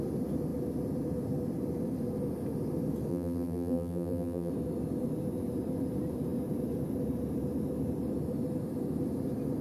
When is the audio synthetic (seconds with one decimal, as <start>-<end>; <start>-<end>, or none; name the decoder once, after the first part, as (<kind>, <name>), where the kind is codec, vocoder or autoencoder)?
3.1-4.5 (vocoder, BigVGAN v2)